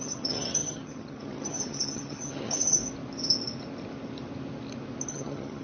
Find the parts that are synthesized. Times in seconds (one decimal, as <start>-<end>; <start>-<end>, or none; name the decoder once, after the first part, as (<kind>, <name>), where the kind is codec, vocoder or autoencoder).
0.0-2.8 (vocoder, HiFi-GAN); 5.1-5.6